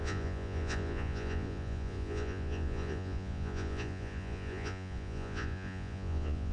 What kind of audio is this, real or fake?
fake